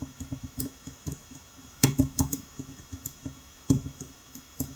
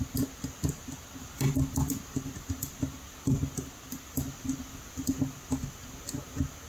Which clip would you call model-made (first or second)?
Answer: first